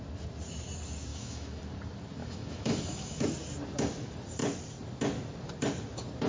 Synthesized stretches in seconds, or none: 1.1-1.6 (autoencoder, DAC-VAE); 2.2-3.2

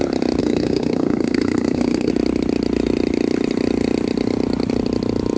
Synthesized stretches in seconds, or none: 0.4-2.1 (codec, SNAC)

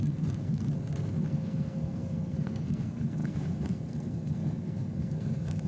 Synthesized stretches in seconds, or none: 0.0-5.7 (codec, SNAC)